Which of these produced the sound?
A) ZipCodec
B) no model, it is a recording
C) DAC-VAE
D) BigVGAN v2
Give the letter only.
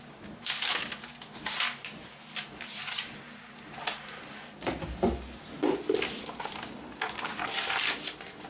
B